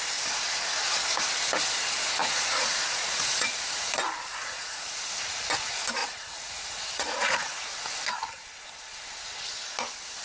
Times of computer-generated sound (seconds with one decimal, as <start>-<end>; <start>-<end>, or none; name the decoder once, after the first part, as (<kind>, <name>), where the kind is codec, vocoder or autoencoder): 2.2-3.9 (vocoder, Vocos); 4.3-5.0; 6.0-7.7